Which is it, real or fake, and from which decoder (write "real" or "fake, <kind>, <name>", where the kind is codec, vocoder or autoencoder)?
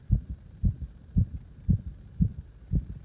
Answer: real